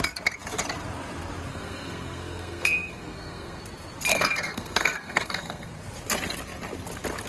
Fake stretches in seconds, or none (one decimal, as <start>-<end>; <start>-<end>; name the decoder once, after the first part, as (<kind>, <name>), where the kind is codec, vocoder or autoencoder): 1.5-3.6 (codec, SNAC); 4.1-5.7